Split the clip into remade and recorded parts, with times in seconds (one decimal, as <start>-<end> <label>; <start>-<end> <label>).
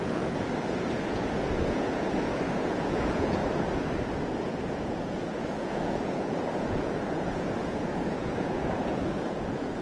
0.0-3.4 remade; 3.4-4.2 recorded; 4.2-9.8 remade